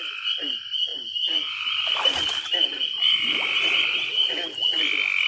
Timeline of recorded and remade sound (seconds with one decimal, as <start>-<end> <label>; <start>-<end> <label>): 0.0-5.3 recorded